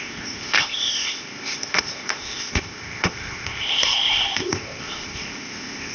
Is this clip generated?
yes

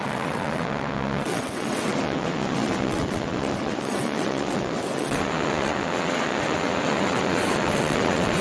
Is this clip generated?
yes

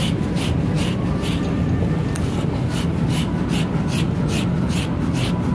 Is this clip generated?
no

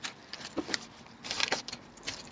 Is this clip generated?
no